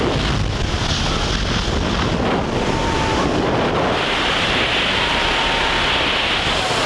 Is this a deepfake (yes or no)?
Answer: no